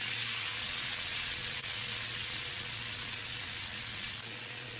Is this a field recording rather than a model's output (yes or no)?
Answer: no